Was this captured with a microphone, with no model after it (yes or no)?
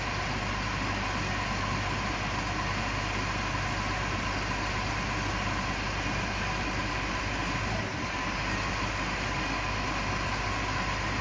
yes